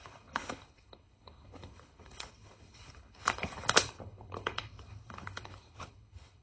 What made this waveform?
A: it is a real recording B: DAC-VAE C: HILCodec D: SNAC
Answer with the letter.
C